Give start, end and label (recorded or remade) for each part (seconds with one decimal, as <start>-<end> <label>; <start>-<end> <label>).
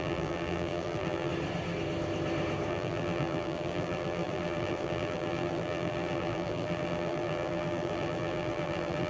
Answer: 0.0-1.3 remade; 1.3-2.7 recorded; 2.7-9.1 remade